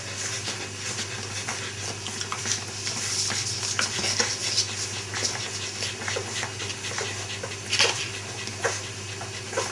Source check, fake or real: real